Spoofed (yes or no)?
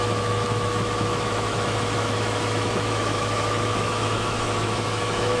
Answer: yes